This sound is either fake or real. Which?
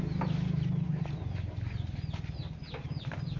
real